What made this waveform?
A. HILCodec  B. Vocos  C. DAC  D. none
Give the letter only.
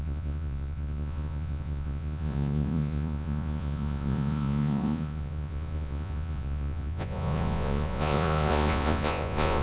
B